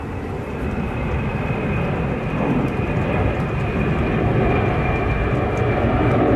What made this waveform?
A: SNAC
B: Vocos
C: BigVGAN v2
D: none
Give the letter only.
D